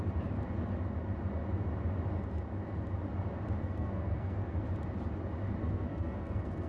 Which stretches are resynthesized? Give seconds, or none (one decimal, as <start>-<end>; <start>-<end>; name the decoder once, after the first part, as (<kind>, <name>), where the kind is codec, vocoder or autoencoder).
3.6-4.6 (codec, SNAC); 5.6-6.7